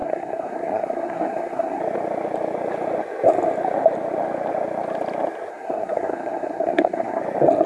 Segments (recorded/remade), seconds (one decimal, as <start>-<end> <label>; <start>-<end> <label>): 0.0-1.8 remade; 1.8-5.5 recorded; 5.5-7.2 remade; 7.2-7.7 recorded